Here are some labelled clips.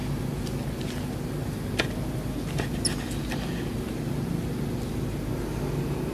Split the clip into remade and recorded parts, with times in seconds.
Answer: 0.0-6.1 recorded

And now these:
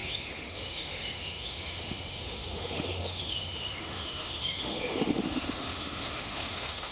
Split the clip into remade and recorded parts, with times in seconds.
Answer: 0.0-6.9 remade

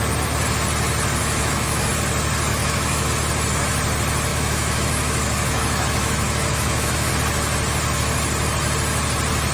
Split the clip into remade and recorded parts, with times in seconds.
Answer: 0.0-1.2 recorded; 1.2-1.9 remade; 1.9-2.5 recorded; 2.5-3.1 remade; 3.1-4.3 recorded; 4.3-7.1 remade; 7.1-9.5 recorded